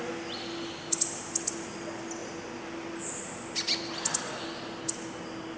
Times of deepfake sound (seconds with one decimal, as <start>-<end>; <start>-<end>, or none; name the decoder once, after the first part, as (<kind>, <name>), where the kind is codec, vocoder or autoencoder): none